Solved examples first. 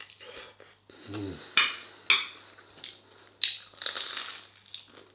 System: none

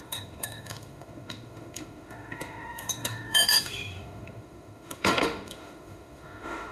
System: autoencoder, DAC-VAE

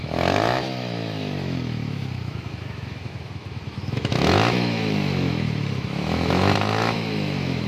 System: autoencoder, DAC-VAE